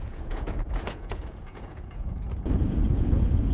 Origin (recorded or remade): remade